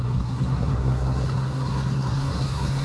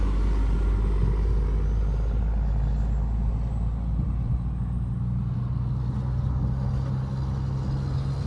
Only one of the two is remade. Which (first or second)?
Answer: first